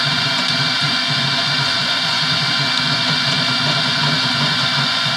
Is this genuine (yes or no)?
no